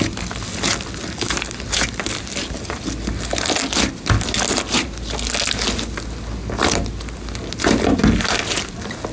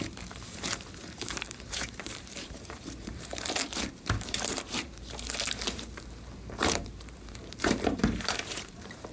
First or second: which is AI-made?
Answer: second